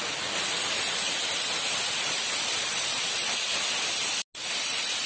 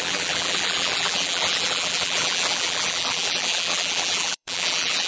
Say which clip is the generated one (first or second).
second